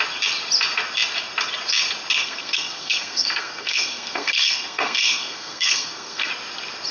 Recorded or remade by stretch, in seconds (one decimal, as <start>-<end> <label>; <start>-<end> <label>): 0.0-2.2 recorded; 2.2-6.3 remade; 6.3-6.9 recorded